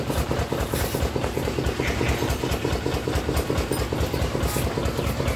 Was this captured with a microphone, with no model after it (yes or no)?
yes